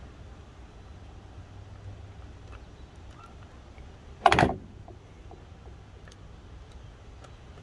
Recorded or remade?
recorded